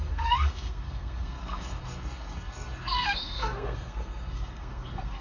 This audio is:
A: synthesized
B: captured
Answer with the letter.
A